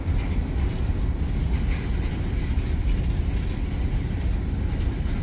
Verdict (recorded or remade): recorded